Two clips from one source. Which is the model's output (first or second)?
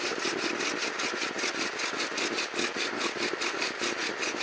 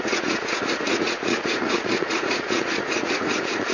second